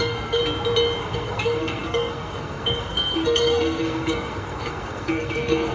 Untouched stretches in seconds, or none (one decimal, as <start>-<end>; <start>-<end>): 0.4-1.0